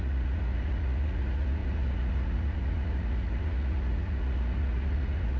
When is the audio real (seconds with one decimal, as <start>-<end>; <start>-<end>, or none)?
none